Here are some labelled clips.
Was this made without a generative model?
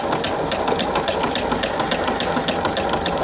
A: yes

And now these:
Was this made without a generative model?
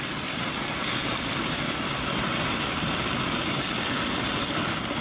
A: no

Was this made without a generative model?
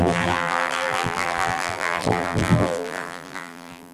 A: no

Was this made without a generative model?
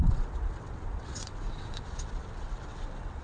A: no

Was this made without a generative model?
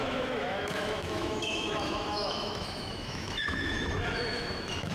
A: no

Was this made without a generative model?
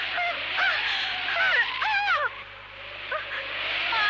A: yes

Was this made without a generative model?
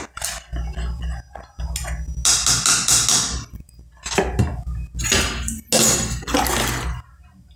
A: yes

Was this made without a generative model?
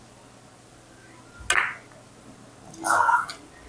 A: yes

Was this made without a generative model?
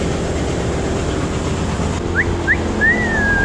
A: yes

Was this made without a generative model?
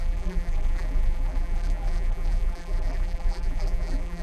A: no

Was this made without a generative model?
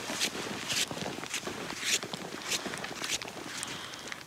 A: yes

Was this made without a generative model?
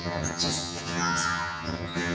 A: no